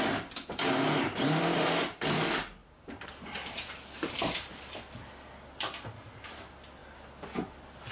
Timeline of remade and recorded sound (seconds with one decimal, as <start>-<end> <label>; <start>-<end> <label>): 0.0-7.9 recorded